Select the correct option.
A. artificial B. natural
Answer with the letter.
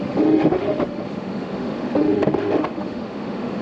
A